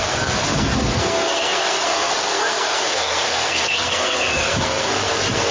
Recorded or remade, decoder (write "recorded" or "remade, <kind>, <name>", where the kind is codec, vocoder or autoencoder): remade, codec, SNAC